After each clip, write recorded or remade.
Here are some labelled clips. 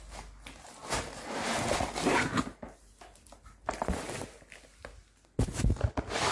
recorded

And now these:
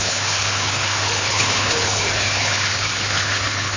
remade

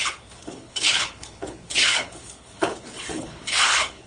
remade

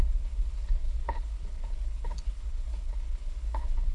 remade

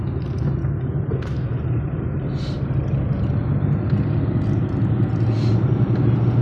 recorded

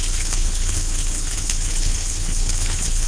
remade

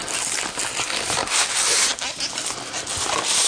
recorded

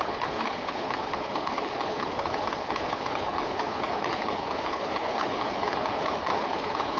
remade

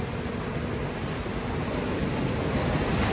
recorded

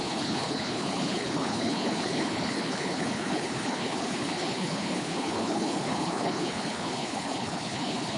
remade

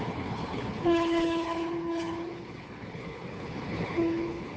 remade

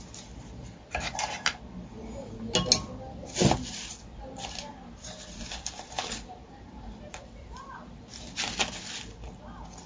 recorded